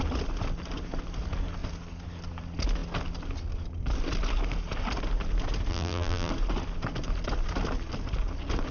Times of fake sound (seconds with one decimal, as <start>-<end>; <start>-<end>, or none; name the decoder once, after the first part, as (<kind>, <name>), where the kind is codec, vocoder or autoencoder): 5.7-6.3 (vocoder, BigVGAN v2)